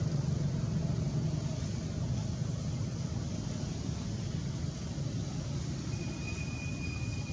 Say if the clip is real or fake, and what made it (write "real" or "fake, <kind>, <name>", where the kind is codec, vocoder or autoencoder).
real